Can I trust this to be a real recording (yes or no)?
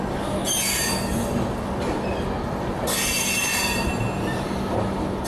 yes